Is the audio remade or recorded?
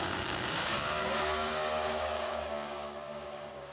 remade